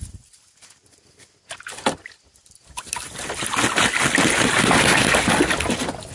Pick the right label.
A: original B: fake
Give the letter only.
A